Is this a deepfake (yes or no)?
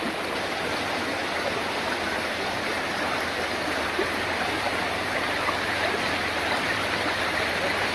no